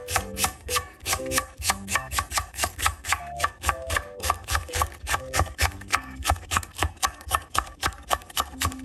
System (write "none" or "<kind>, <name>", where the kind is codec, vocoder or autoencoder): codec, SNAC